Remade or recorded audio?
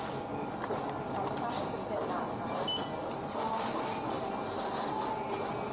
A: recorded